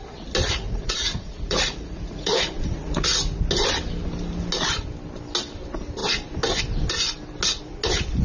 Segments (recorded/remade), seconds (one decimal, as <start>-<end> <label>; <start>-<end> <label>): 0.0-0.4 recorded; 0.4-3.4 remade; 3.4-8.2 recorded